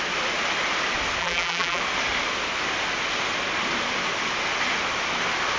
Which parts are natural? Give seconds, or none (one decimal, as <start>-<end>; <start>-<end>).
0.0-1.2; 1.8-5.6